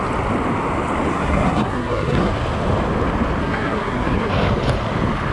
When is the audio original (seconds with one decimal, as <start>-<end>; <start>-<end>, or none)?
0.0-1.1; 2.3-3.4; 4.3-5.3